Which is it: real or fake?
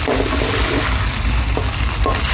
real